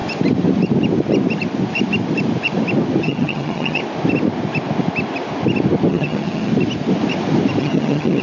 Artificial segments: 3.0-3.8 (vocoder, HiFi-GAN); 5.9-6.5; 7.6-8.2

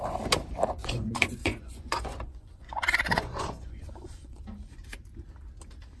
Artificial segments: 0.8-4.4 (vocoder, Vocos)